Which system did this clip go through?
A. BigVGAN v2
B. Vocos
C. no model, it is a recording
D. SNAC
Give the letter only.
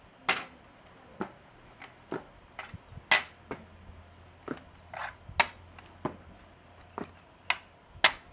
C